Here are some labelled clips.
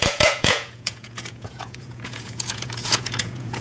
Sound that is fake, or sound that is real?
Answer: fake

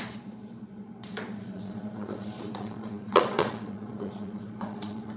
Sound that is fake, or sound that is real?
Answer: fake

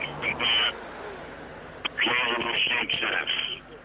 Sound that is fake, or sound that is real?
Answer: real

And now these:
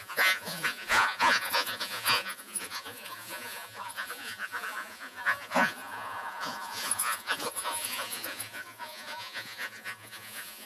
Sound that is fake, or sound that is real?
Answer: fake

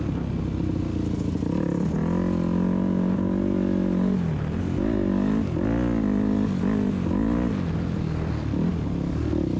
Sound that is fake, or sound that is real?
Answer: real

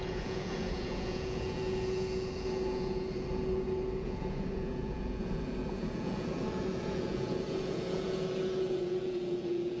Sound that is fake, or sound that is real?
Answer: fake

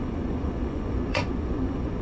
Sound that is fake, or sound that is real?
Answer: fake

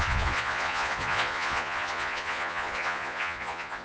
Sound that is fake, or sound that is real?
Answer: fake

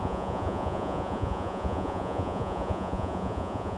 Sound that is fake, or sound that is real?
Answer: fake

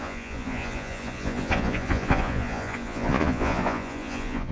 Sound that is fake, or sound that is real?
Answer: fake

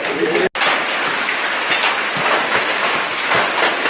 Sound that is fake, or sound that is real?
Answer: real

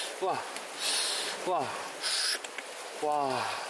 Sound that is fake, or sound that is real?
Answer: real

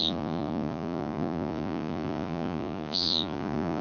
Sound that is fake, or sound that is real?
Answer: fake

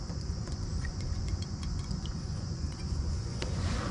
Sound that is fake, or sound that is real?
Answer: fake